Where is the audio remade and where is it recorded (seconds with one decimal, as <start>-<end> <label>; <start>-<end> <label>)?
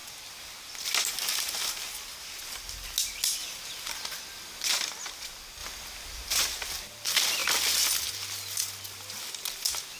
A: 0.0-10.0 recorded